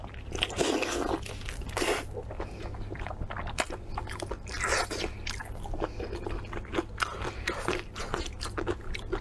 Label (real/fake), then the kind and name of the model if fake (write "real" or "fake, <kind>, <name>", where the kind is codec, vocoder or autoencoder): real